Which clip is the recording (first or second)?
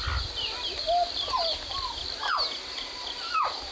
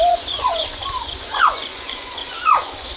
first